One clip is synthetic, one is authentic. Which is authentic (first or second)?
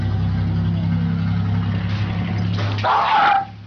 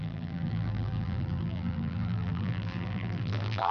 first